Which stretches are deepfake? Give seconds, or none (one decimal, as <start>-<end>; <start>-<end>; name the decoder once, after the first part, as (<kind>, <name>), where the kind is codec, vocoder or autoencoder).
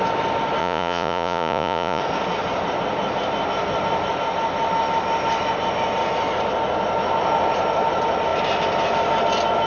0.6-2.0 (vocoder, Vocos)